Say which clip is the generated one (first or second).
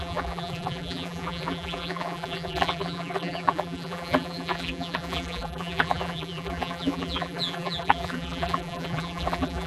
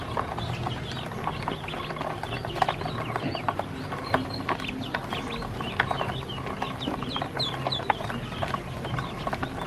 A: first